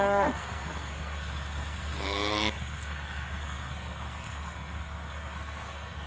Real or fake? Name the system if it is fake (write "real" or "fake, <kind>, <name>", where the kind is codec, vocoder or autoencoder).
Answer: fake, codec, SNAC